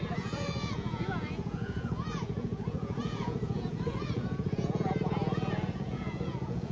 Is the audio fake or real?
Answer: fake